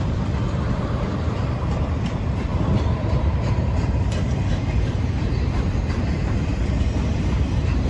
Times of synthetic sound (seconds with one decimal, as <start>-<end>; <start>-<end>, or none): 0.0-6.5; 7.1-7.9